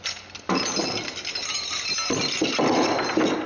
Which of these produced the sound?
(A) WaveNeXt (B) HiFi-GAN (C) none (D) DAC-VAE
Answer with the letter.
C